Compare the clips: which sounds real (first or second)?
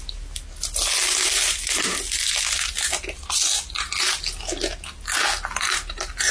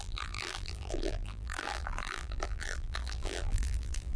first